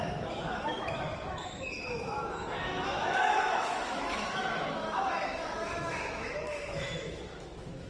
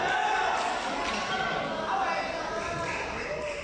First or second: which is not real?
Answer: first